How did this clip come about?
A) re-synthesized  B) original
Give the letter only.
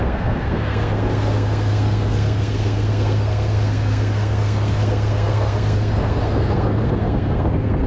A